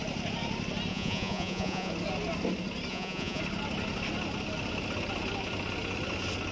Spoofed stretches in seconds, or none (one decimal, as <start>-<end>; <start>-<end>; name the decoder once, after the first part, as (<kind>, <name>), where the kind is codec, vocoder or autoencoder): 0.9-1.9 (vocoder, Vocos); 2.9-3.4